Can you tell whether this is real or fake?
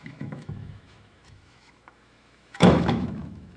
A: fake